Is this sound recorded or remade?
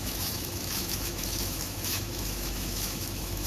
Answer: remade